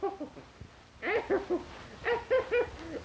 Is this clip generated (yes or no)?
no